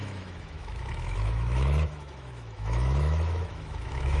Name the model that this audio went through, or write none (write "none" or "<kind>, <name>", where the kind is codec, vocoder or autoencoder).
autoencoder, DAC-VAE